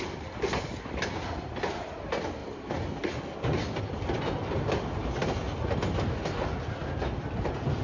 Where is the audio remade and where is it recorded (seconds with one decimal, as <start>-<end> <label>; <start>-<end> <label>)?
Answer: 0.0-7.8 recorded